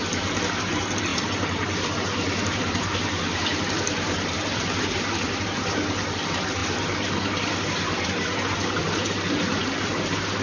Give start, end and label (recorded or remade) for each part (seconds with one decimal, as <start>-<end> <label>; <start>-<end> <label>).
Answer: 0.0-1.1 recorded; 1.1-5.3 remade; 5.3-6.6 recorded; 6.6-7.1 remade; 7.1-8.8 recorded; 8.8-10.4 remade

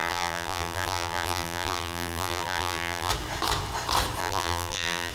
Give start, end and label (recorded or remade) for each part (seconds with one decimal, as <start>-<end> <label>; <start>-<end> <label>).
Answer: 0.0-3.1 remade; 3.1-4.2 recorded; 4.2-5.1 remade

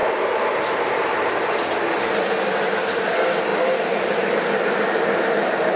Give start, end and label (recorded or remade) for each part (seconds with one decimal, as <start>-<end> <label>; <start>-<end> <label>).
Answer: 0.0-3.5 recorded; 3.5-5.8 remade

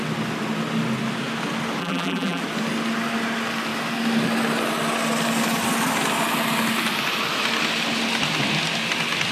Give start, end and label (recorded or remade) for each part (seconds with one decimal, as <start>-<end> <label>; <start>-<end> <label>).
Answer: 0.0-1.8 recorded; 1.8-2.4 remade; 2.4-9.3 recorded

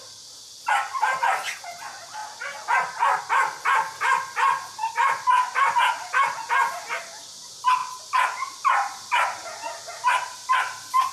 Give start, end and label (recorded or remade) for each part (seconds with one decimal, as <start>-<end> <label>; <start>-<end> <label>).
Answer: 0.0-11.1 recorded

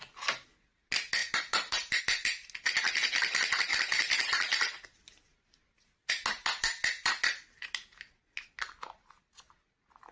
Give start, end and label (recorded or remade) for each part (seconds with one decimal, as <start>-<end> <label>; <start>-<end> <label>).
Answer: 0.0-1.2 recorded; 1.2-2.0 remade; 2.0-10.1 recorded

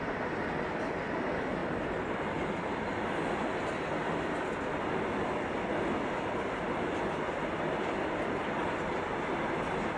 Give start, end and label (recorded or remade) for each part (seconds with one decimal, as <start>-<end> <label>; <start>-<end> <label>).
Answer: 0.0-10.0 recorded

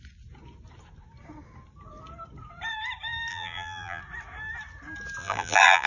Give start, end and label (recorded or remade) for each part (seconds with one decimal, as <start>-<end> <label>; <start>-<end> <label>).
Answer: 0.0-3.3 recorded; 3.3-4.0 remade; 4.0-5.2 recorded; 5.2-5.9 remade